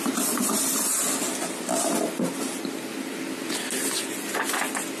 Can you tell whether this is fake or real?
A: real